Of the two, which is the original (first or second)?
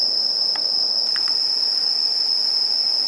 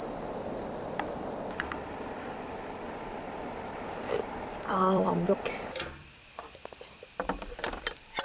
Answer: first